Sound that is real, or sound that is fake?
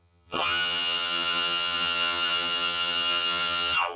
fake